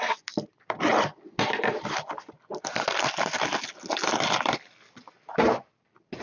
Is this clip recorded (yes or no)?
yes